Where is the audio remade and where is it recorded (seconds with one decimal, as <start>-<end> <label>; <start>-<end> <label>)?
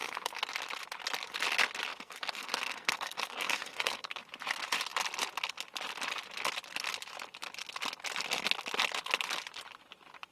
0.0-0.5 remade; 0.5-1.9 recorded; 1.9-4.2 remade; 4.2-10.3 recorded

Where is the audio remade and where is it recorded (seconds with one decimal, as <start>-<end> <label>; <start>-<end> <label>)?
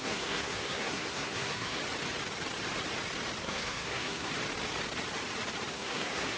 0.0-1.8 remade; 1.8-3.4 recorded; 3.4-4.3 remade; 4.3-5.7 recorded; 5.7-6.4 remade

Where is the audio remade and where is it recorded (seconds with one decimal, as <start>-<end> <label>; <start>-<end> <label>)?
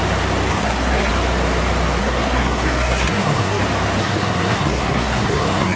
0.0-0.5 recorded; 0.5-1.1 remade; 1.1-2.0 recorded; 2.0-3.6 remade; 3.6-4.0 recorded; 4.0-5.8 remade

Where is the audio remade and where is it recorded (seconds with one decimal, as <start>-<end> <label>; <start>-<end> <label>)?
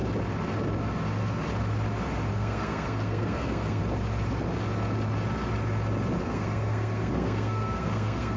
0.0-2.3 recorded; 2.3-3.8 remade; 3.8-6.2 recorded; 6.2-8.4 remade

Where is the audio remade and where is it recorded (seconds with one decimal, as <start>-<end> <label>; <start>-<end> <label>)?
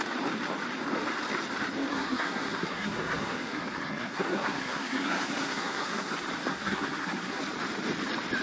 0.0-1.9 recorded; 1.9-6.1 remade; 6.1-6.5 recorded; 6.5-7.4 remade; 7.4-8.4 recorded